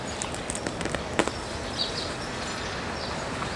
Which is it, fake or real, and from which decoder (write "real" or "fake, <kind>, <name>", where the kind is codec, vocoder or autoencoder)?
real